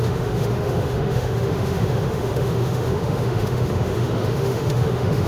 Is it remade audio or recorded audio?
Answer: remade